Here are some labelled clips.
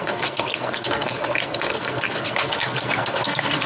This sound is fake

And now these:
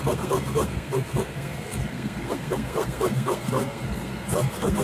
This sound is fake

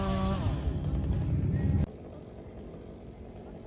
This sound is real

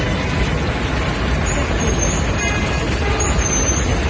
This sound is real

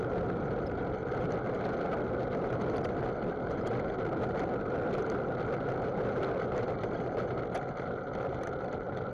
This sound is real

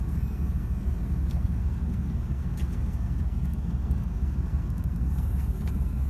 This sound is fake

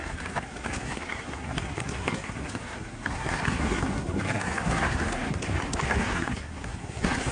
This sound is fake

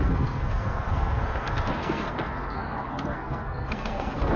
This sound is fake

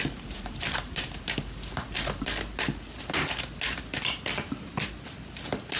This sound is real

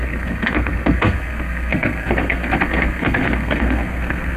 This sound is fake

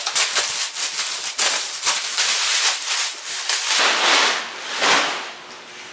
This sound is real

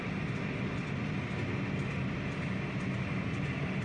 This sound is real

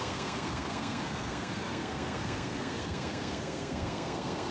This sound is fake